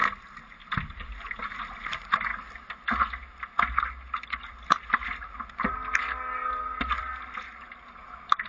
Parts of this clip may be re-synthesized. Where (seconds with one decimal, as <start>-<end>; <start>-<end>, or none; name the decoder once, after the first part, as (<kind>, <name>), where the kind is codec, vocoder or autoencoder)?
none